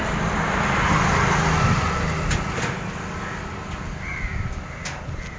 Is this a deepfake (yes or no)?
no